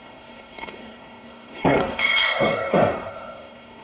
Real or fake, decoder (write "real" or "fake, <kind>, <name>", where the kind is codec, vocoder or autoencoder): fake, codec, SNAC